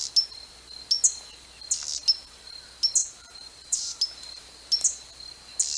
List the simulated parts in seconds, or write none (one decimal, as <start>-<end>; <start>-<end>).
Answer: 3.0-4.1

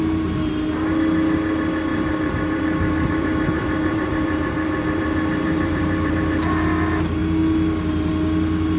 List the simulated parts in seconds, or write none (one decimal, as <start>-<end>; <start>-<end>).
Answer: 1.9-6.1

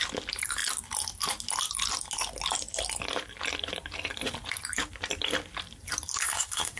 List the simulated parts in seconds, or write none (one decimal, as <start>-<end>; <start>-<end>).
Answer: 6.2-6.8

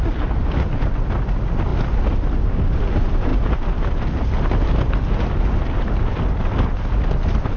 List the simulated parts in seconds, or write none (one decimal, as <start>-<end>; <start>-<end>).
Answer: none

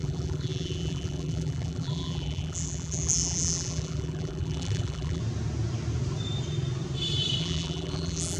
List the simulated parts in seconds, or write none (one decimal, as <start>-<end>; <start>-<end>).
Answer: 0.0-5.2; 7.4-8.4